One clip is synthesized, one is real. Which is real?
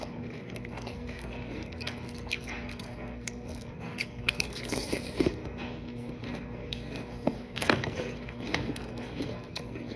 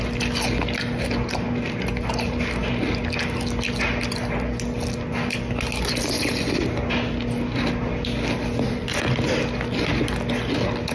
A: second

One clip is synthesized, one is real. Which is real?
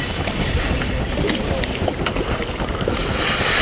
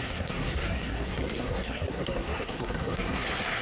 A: first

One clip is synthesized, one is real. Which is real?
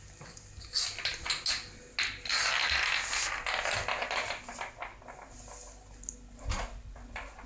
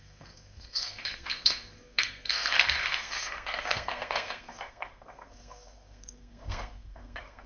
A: first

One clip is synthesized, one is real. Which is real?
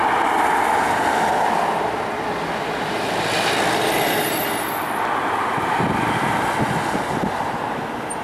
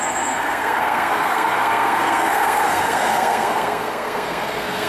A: first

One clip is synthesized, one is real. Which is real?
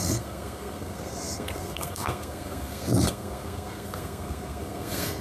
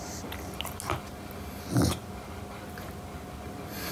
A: second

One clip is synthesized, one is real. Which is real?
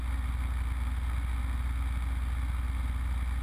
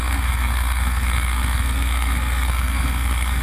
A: first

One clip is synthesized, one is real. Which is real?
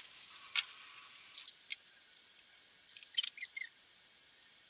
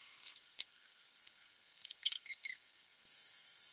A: first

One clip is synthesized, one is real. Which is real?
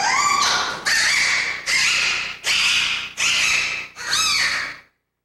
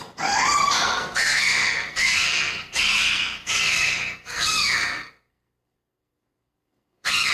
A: first